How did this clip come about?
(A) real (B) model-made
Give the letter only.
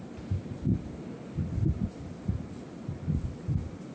A